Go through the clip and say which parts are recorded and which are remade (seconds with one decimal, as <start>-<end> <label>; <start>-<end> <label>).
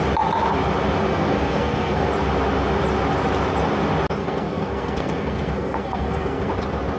0.0-1.1 recorded; 1.1-2.1 remade; 2.1-4.2 recorded; 4.2-6.5 remade; 6.5-7.0 recorded